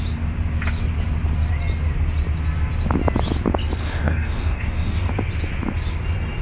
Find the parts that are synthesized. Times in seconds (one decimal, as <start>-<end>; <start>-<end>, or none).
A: 3.8-5.1